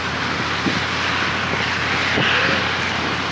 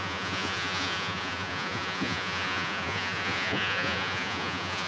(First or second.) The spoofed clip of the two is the second